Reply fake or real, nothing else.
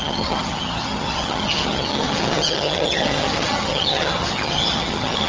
fake